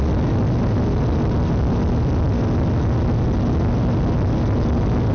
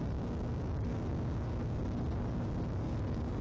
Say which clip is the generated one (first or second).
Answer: second